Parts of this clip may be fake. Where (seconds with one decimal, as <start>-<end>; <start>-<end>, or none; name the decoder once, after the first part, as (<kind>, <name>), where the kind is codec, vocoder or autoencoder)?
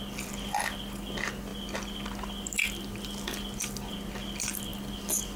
none